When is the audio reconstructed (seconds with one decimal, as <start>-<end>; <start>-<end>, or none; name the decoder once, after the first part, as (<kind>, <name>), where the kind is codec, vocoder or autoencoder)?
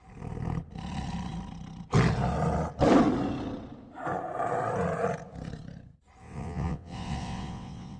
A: 6.2-8.0 (vocoder, WaveNeXt)